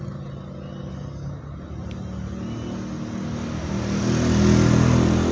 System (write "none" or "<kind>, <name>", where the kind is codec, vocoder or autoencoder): none